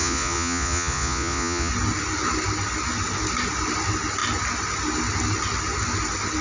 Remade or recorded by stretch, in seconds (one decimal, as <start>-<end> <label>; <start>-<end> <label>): 0.0-1.7 remade; 1.7-6.4 recorded